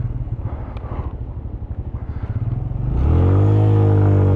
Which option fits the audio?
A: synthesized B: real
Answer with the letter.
B